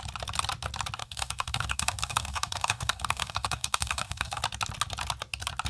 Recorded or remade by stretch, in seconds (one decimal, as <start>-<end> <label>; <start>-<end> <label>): 0.0-1.0 recorded; 1.0-4.4 remade; 4.4-5.7 recorded